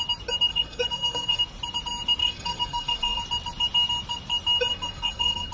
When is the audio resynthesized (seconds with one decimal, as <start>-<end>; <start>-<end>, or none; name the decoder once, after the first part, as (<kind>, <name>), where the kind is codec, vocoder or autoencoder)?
0.5-1.4 (codec, SNAC); 2.2-3.2; 4.7-5.5